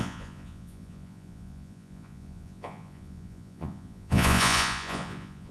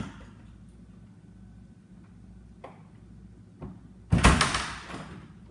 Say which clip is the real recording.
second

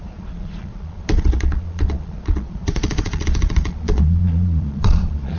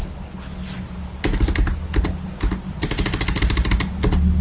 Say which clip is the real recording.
second